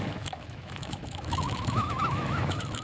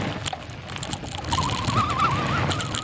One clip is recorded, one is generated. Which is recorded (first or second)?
second